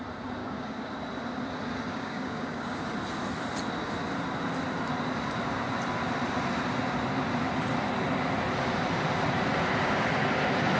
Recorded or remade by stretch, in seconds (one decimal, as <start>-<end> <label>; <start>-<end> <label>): 0.0-0.4 recorded; 0.4-0.9 remade; 0.9-1.9 recorded; 1.9-2.9 remade; 2.9-10.8 recorded